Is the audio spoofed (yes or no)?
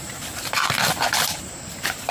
yes